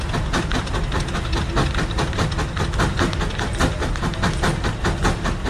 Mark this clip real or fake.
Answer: real